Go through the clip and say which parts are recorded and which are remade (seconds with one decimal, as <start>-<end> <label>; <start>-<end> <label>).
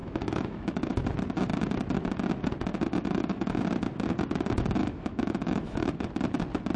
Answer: 0.0-1.0 remade; 1.0-2.7 recorded; 2.7-3.6 remade; 3.6-4.8 recorded; 4.8-6.1 remade; 6.1-6.8 recorded